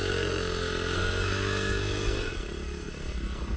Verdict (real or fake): fake